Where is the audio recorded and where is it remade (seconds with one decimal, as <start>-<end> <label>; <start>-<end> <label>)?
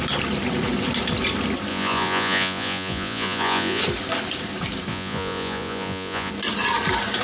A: 0.0-1.7 recorded; 1.7-3.8 remade; 3.8-4.9 recorded; 4.9-6.3 remade; 6.3-7.2 recorded